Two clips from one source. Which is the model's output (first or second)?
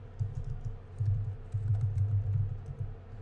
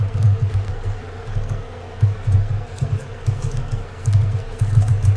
second